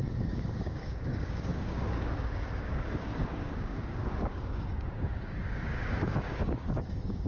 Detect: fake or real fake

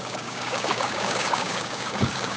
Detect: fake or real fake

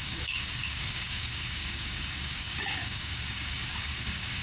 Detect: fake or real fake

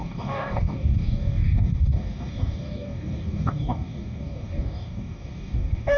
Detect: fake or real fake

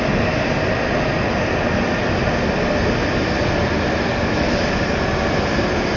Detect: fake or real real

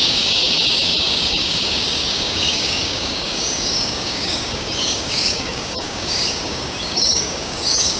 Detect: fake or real fake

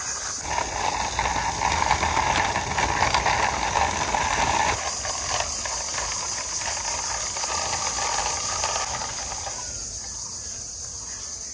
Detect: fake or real real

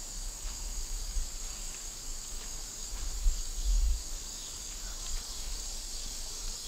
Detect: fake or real fake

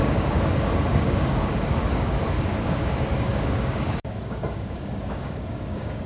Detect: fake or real fake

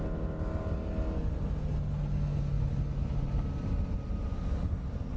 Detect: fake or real real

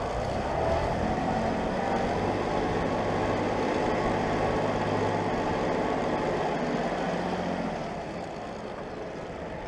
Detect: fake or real real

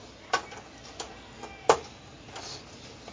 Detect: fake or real real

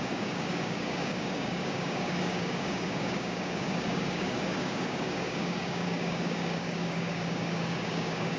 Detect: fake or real fake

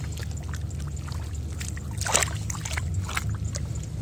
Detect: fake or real real